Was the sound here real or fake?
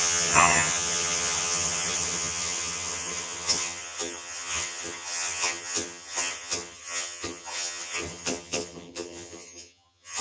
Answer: fake